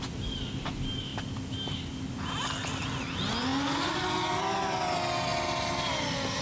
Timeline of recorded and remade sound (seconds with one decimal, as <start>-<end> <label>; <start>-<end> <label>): 0.0-5.3 recorded; 5.3-6.4 remade